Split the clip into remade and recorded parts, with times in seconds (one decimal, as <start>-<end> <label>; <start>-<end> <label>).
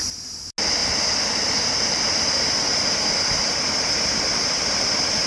0.0-5.3 recorded